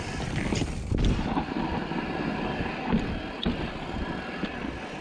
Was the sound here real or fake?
real